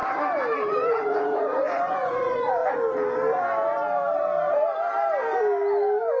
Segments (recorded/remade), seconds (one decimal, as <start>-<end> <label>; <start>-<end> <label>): 0.0-0.7 recorded; 0.7-2.6 remade; 2.6-6.2 recorded